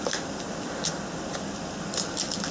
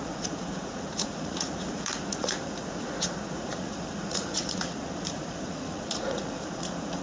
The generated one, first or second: second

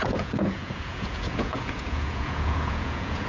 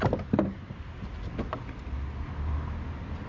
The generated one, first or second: first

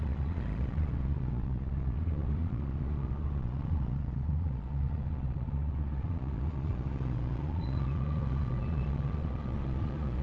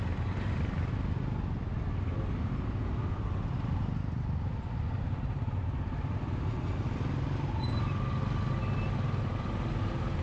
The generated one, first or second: first